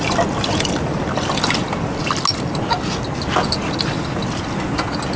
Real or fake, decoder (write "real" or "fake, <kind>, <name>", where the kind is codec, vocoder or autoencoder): real